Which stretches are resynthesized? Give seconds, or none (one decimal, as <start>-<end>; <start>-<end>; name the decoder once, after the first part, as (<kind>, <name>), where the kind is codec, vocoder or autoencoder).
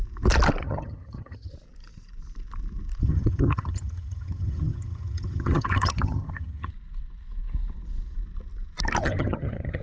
0.6-1.5 (vocoder, HiFi-GAN); 3.0-6.7; 9.0-9.8